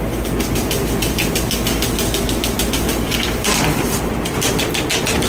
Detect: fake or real real